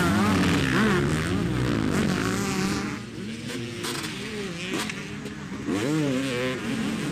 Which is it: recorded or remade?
recorded